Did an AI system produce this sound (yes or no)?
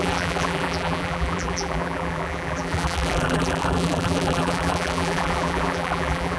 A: yes